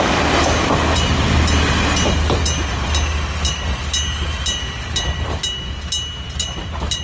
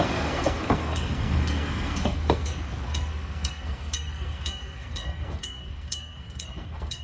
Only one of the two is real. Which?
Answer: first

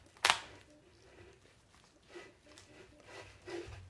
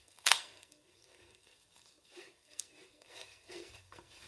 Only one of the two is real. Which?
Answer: first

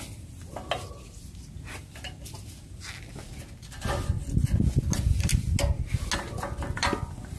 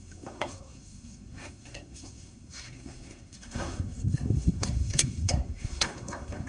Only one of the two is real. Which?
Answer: first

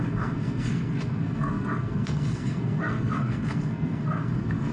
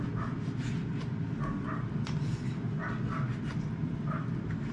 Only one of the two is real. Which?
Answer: second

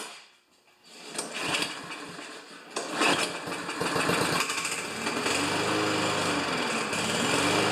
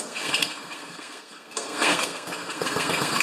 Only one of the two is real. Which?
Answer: first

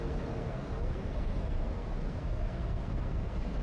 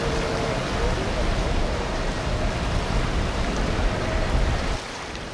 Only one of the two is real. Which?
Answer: second